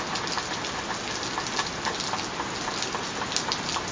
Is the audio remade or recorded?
recorded